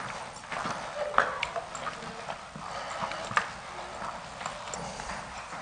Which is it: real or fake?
real